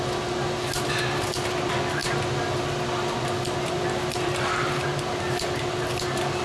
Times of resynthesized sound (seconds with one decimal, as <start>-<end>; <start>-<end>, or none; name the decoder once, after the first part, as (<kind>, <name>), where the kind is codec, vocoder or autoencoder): none